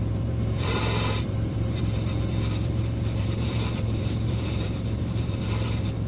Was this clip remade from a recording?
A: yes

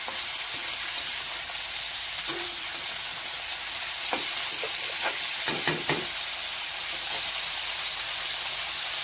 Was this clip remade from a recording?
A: yes